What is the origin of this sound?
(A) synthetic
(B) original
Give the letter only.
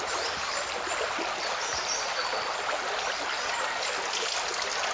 B